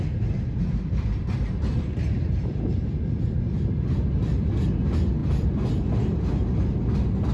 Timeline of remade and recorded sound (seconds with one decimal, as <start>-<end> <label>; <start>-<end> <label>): 0.0-7.3 recorded